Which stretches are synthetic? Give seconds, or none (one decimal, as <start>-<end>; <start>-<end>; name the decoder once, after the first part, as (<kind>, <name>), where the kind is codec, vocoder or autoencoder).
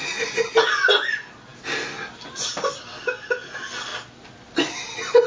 none